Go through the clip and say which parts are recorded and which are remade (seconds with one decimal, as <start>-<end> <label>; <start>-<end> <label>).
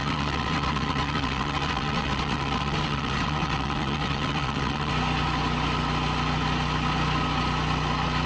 0.0-4.9 remade; 4.9-8.3 recorded